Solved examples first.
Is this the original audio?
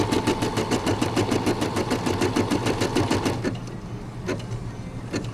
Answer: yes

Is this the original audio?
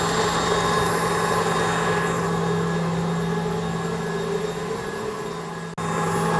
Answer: yes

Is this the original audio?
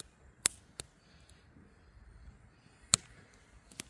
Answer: yes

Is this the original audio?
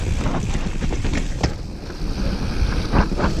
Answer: yes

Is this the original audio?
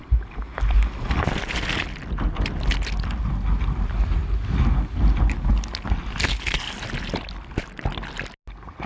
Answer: yes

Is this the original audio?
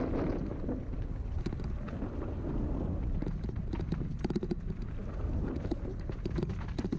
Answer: yes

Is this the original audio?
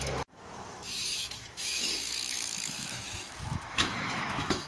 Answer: no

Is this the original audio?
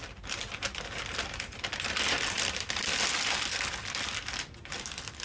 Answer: yes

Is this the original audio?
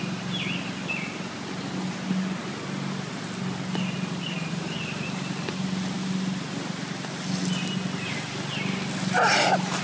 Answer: yes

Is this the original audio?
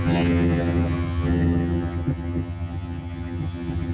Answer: no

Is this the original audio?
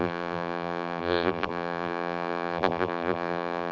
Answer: no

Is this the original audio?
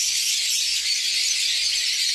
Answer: yes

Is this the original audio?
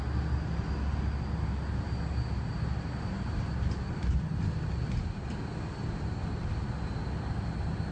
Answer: yes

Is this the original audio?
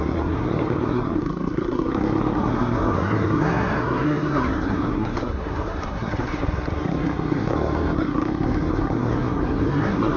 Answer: no